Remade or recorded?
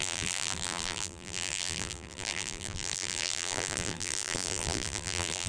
remade